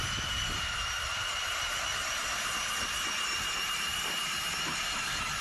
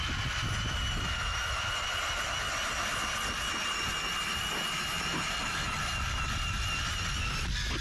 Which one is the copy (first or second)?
first